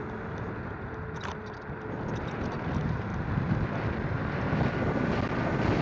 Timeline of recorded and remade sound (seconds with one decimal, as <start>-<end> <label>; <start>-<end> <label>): 0.0-5.8 recorded